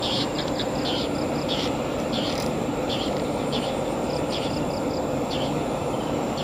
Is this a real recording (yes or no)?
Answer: no